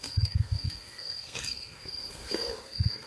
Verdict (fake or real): fake